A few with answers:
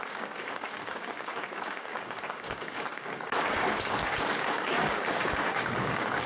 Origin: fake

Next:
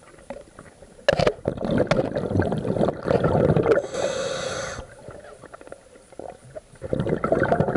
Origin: real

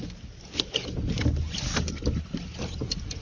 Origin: real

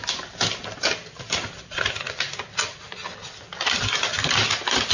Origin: real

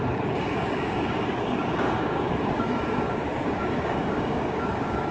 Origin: fake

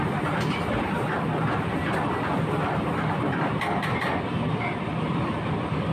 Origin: real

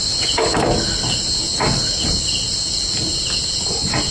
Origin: real